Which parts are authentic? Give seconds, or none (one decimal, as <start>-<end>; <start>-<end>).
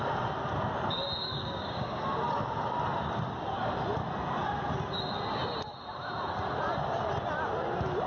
0.0-1.4; 2.0-8.1